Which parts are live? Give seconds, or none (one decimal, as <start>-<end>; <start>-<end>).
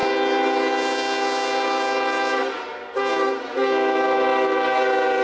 0.0-5.2